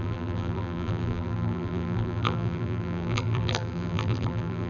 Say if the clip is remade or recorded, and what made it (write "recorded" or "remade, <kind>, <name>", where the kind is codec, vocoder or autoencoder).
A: remade, vocoder, BigVGAN v2